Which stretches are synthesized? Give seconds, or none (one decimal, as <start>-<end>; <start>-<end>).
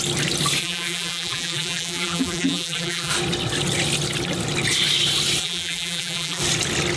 0.6-3.1; 5.4-6.4